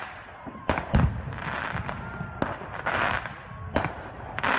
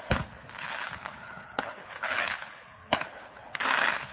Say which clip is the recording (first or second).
first